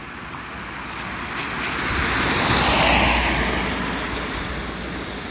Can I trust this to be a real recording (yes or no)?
yes